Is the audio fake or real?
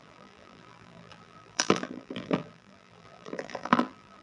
fake